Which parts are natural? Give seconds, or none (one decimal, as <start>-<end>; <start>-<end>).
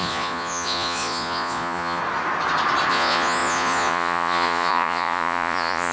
2.0-2.9